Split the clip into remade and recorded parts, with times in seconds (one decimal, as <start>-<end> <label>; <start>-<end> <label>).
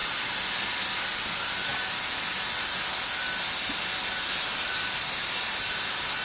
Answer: 0.0-6.2 recorded